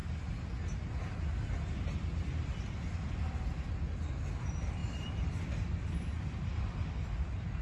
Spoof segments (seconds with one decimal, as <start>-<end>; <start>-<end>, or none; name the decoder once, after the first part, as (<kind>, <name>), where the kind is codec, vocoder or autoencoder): none